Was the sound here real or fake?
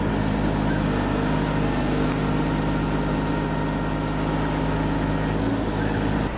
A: real